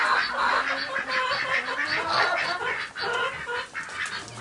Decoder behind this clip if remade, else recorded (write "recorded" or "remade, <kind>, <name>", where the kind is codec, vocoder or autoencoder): recorded